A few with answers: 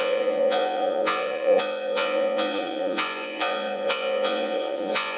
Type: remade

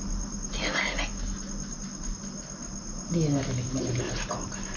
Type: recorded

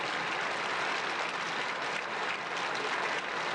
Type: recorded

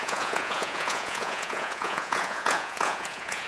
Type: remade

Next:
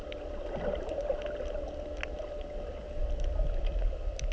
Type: recorded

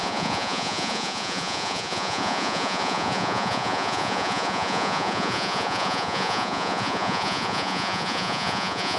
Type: remade